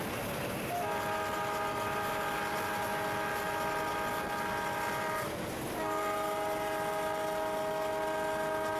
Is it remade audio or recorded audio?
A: recorded